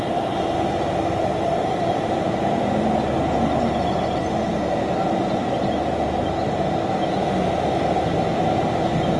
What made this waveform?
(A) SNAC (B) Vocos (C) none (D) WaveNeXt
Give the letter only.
C